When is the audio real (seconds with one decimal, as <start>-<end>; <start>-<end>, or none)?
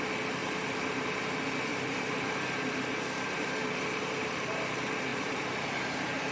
0.0-0.4; 1.2-1.7; 4.6-5.1